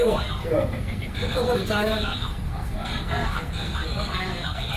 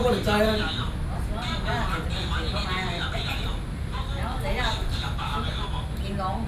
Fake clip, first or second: first